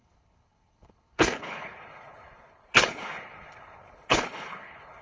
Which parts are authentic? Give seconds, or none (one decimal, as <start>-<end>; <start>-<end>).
none